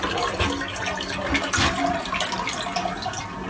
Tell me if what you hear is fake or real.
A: real